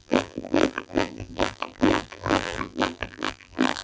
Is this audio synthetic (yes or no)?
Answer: yes